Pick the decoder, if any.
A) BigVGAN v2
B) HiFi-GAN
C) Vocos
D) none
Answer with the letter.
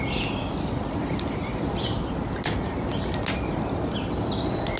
D